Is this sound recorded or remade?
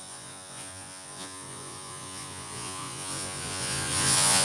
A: remade